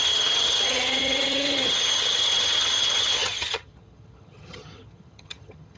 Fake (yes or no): yes